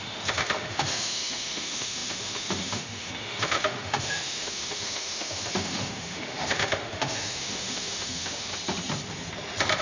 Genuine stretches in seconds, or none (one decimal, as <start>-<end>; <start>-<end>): 8.5-9.8